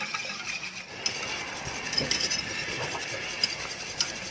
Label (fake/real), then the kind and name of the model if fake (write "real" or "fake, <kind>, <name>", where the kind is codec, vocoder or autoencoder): real